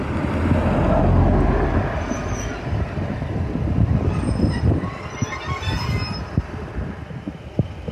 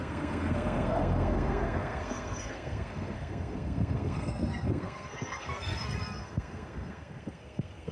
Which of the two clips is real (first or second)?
first